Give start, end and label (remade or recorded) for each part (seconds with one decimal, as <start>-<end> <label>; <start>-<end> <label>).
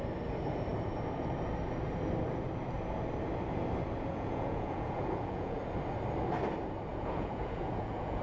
0.0-4.1 recorded; 4.1-5.6 remade; 5.6-6.9 recorded; 6.9-8.2 remade